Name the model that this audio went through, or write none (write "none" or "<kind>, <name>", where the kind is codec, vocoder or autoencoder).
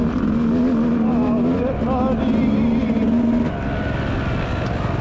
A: none